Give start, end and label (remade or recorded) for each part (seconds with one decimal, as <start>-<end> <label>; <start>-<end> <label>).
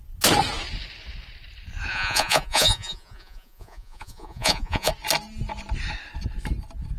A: 0.0-1.9 recorded; 1.9-4.9 remade; 4.9-7.0 recorded